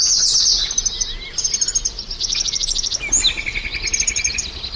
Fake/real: real